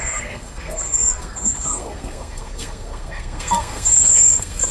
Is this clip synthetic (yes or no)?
yes